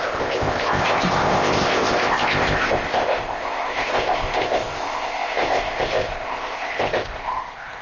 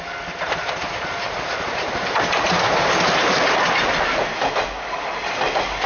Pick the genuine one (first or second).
second